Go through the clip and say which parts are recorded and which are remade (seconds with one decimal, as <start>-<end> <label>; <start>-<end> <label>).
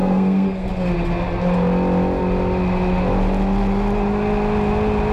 0.0-0.7 remade; 0.7-5.1 recorded